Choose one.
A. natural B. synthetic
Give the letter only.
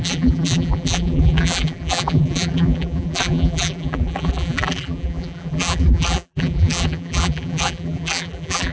B